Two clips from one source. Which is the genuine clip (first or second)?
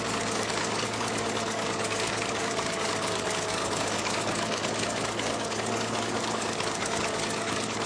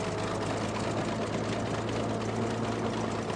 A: second